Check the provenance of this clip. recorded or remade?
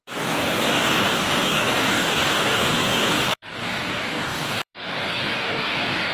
remade